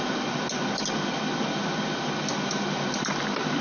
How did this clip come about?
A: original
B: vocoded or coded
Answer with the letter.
A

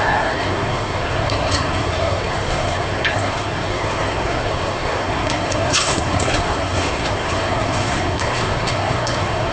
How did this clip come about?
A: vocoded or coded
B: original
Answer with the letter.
A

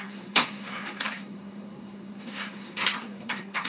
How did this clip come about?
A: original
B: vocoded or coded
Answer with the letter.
B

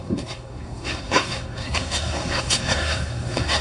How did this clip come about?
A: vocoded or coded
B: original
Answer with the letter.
A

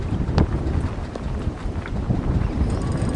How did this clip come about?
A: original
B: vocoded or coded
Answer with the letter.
A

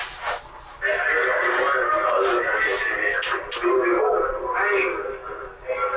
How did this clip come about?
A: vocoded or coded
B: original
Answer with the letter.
B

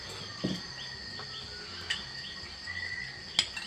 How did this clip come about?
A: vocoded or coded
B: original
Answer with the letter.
B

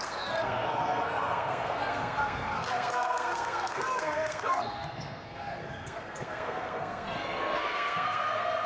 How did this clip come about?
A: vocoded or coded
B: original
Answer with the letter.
A